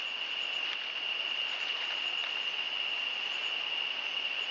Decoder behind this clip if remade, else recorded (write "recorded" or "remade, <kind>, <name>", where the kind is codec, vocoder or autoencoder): recorded